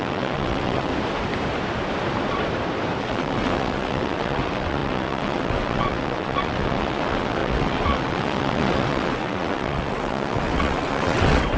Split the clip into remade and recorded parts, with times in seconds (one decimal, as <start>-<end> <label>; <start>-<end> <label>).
0.0-0.9 remade; 0.9-3.0 recorded; 3.0-11.6 remade

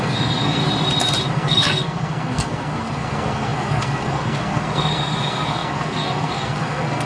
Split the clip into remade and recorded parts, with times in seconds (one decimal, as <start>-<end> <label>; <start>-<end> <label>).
0.0-0.6 remade; 0.6-1.3 recorded; 1.3-7.1 remade

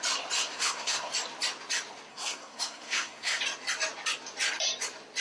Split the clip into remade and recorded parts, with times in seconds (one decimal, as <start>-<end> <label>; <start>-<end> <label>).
0.0-0.4 recorded; 0.4-1.1 remade; 1.1-2.1 recorded; 2.1-3.4 remade; 3.4-5.2 recorded

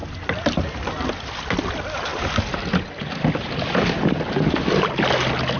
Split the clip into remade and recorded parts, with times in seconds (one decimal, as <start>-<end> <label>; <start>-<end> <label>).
0.0-5.6 recorded

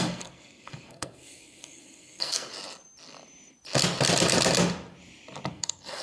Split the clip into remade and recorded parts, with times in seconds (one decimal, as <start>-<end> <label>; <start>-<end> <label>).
0.0-2.5 remade; 2.5-5.5 recorded; 5.5-6.0 remade

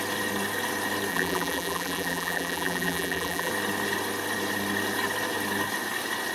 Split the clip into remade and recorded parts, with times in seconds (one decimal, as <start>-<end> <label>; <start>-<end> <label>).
0.0-1.1 recorded; 1.1-3.5 remade; 3.5-6.3 recorded

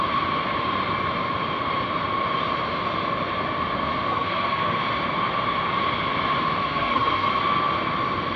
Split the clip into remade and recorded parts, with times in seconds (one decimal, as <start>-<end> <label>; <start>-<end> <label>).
0.0-4.1 recorded; 4.1-4.8 remade; 4.8-6.6 recorded; 6.6-7.4 remade; 7.4-8.4 recorded